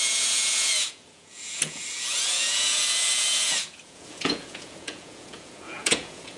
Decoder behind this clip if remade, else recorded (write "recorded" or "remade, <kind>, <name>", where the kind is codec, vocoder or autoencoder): remade, vocoder, Vocos